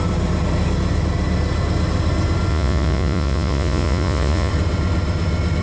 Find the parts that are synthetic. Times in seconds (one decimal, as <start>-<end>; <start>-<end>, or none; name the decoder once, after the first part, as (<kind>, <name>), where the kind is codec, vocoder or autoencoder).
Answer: 2.5-4.5 (vocoder, Vocos)